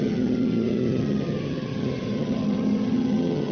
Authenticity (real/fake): fake